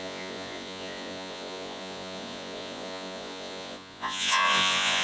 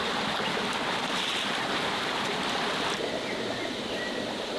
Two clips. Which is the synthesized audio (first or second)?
first